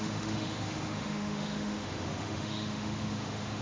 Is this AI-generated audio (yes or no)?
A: yes